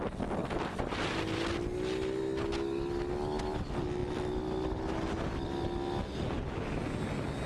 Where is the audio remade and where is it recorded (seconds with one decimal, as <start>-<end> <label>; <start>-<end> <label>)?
0.0-7.5 recorded